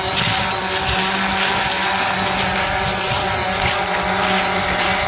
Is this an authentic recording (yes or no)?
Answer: yes